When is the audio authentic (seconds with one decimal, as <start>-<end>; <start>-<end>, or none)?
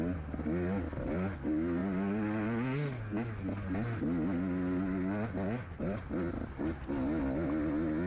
0.0-8.1